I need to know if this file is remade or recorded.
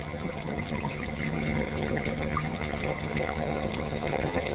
remade